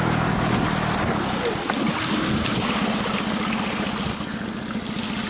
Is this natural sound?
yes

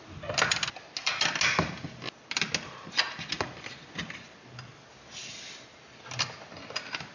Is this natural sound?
yes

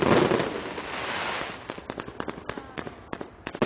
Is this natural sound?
yes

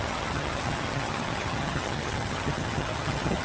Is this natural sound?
no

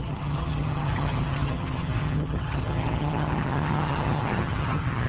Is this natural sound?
no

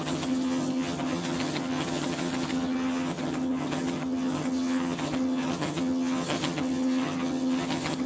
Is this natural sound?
no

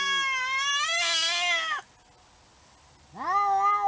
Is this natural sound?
yes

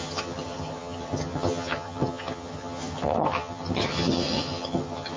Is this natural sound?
no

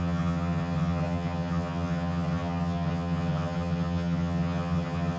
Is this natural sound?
no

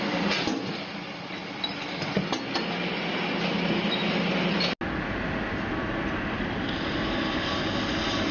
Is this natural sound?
yes